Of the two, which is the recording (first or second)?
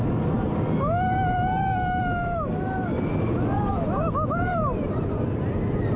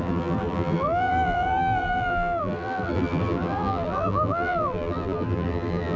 first